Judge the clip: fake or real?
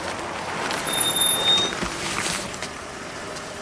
fake